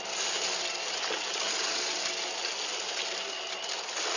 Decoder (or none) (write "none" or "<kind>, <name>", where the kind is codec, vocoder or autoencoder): none